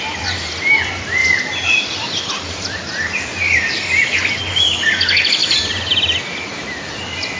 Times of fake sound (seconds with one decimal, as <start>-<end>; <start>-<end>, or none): 1.2-4.3